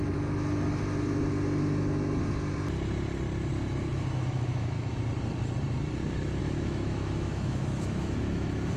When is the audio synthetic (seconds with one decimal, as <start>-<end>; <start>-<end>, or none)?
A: 3.9-5.0; 6.4-8.8